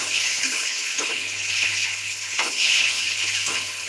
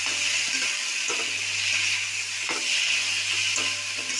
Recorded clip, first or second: second